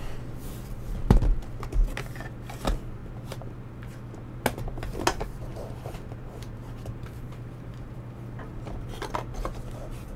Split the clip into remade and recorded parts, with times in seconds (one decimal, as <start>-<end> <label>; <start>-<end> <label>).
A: 0.0-3.0 recorded; 3.0-3.7 remade; 3.7-5.5 recorded; 5.5-7.7 remade; 7.7-10.2 recorded